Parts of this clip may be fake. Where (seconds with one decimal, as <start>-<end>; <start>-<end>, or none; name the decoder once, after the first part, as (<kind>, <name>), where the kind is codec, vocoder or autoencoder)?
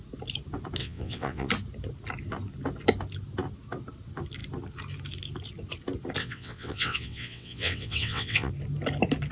0.8-1.5 (vocoder, WaveNeXt); 6.2-8.5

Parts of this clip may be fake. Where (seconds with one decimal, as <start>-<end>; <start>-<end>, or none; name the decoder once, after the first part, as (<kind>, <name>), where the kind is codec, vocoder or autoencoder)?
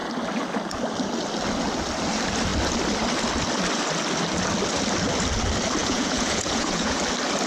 5.8-7.0 (vocoder, Vocos)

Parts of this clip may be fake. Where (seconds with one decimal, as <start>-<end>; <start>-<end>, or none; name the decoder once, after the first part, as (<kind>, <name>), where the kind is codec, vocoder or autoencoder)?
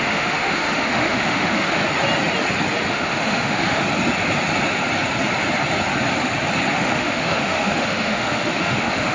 0.0-1.8 (autoencoder, DAC-VAE); 2.9-3.9; 6.7-9.1